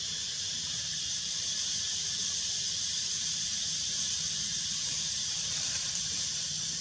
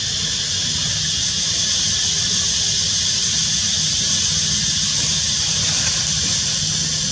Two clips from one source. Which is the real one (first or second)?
second